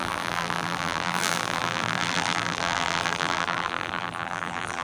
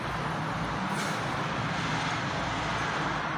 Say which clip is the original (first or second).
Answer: second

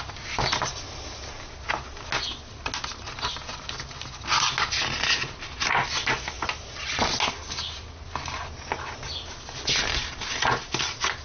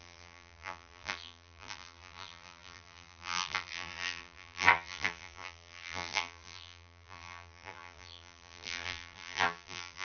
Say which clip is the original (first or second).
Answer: first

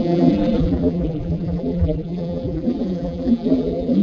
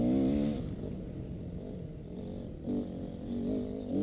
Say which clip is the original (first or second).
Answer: second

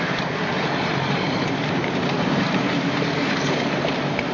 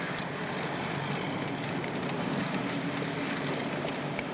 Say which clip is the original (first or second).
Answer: second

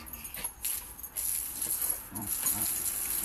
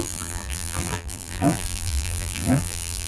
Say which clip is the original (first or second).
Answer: first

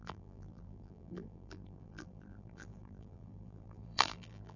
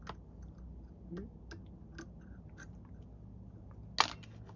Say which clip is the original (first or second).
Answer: second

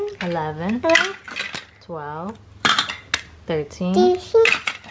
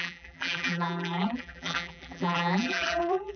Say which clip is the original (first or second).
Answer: first